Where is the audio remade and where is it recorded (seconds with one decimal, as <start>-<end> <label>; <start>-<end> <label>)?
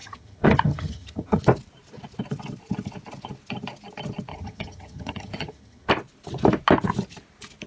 0.0-1.4 remade; 1.4-4.3 recorded; 4.3-5.9 remade; 5.9-7.7 recorded